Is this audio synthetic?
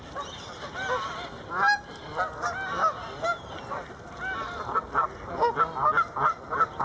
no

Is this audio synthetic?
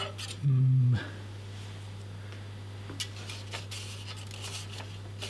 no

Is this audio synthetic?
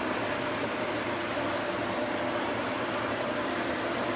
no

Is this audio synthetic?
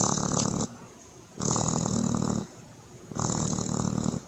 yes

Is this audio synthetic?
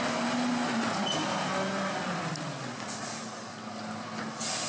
no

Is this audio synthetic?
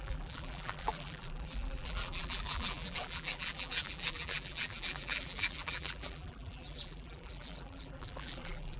yes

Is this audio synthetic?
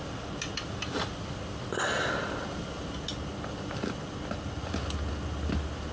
no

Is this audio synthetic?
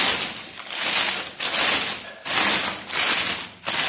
no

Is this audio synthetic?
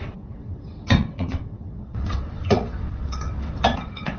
yes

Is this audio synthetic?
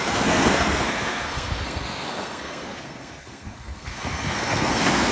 yes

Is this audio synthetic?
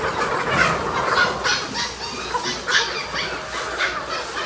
no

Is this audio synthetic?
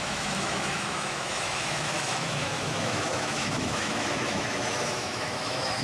yes